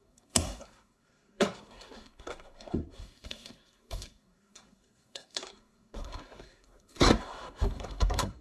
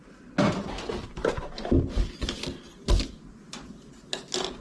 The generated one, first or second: first